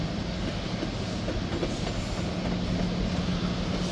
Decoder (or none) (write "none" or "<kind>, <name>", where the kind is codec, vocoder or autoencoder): none